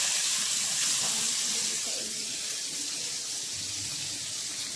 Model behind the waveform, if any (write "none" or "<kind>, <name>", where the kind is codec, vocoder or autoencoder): none